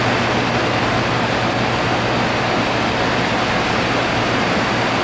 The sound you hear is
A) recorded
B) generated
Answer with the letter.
A